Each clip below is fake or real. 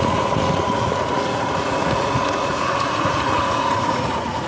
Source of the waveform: fake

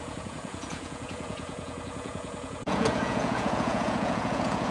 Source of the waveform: fake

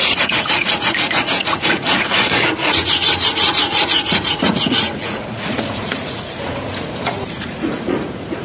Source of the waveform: fake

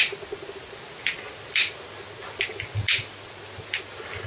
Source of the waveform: real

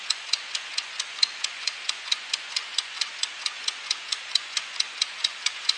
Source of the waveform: fake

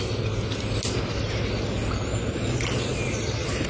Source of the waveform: real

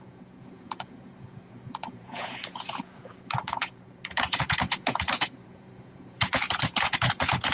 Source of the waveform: fake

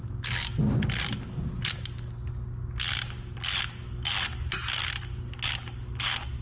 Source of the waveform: real